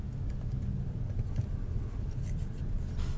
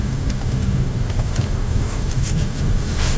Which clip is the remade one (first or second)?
second